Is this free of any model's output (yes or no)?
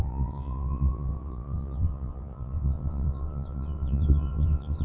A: no